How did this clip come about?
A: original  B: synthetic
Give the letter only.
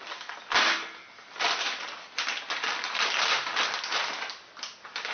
A